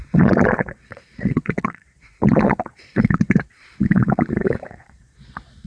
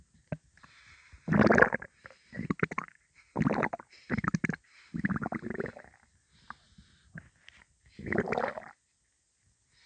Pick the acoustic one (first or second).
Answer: second